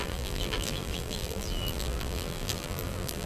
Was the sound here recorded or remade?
remade